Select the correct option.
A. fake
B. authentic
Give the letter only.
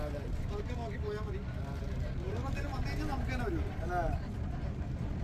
B